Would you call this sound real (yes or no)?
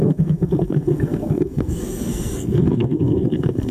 no